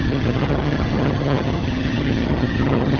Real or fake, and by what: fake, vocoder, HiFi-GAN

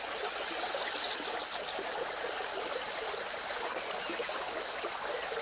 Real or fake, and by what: real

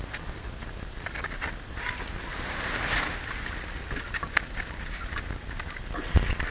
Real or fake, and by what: real